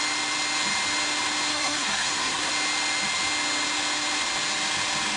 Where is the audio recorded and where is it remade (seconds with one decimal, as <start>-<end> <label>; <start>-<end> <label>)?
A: 0.0-1.5 recorded; 1.5-2.5 remade; 2.5-5.2 recorded